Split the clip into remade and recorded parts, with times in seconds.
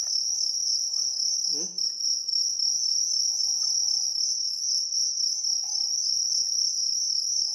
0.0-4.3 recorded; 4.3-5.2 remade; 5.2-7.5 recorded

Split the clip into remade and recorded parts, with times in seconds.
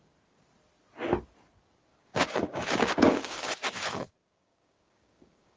0.0-1.9 recorded; 1.9-5.6 remade